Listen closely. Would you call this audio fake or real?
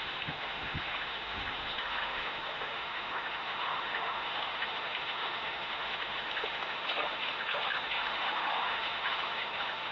fake